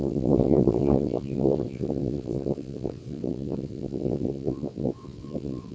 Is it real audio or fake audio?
fake